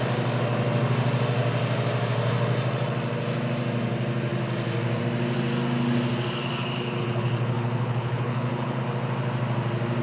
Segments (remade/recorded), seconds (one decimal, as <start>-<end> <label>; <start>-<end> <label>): 0.0-7.0 recorded; 7.0-8.8 remade; 8.8-10.0 recorded